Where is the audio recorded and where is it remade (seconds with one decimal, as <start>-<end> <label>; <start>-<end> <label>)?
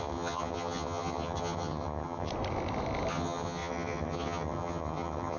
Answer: 0.0-2.3 remade; 2.3-3.1 recorded; 3.1-5.4 remade